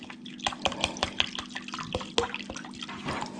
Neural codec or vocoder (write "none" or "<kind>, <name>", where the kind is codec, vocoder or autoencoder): none